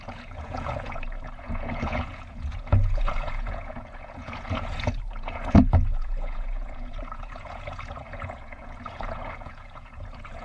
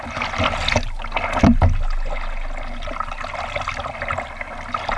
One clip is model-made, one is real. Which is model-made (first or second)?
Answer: first